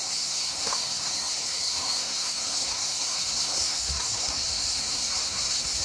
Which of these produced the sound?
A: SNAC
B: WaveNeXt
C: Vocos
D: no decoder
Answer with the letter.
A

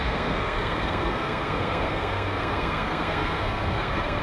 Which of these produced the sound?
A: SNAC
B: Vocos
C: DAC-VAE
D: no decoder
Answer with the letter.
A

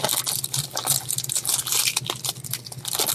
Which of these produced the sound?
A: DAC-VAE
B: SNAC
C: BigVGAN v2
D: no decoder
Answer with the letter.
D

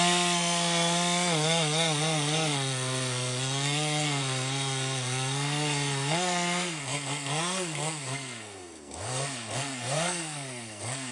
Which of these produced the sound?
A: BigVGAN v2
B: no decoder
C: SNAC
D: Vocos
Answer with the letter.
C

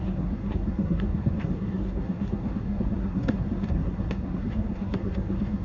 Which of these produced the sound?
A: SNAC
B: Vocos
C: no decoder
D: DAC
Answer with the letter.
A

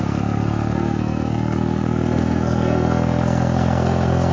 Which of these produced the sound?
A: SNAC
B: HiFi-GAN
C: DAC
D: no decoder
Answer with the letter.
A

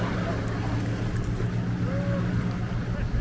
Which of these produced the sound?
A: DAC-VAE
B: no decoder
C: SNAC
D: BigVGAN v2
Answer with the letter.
B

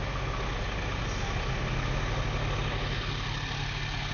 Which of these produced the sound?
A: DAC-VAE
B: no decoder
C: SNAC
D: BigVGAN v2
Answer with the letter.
B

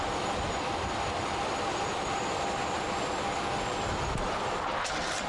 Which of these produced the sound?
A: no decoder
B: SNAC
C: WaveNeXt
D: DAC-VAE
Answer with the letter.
A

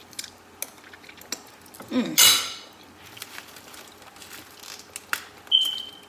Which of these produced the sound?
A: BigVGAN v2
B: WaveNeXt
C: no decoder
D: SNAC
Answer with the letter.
C